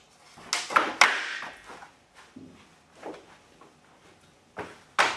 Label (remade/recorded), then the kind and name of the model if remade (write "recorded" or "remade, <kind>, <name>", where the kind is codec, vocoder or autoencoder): recorded